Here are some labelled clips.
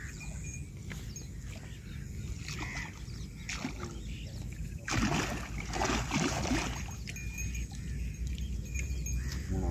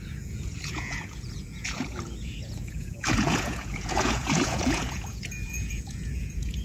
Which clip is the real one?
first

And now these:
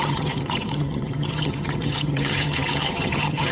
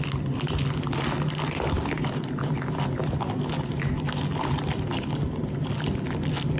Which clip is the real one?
second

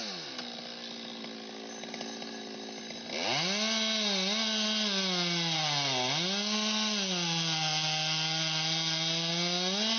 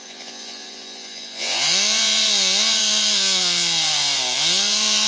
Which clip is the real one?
first